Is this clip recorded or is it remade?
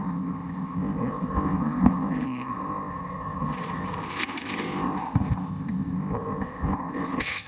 remade